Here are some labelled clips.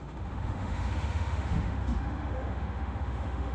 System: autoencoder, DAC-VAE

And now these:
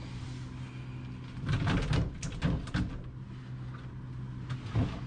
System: none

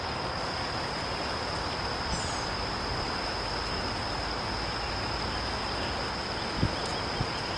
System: none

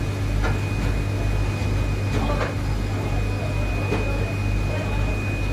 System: none